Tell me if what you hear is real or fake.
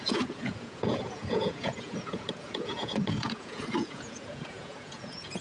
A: fake